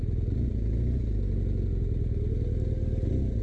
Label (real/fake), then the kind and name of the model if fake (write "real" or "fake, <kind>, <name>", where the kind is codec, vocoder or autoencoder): real